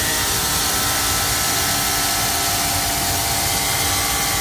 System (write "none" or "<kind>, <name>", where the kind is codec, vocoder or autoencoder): none